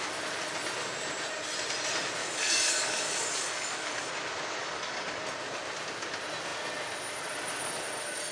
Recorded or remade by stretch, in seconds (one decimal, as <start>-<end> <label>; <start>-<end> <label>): 0.0-2.2 recorded; 2.2-4.1 remade; 4.1-4.6 recorded; 4.6-5.2 remade; 5.2-8.3 recorded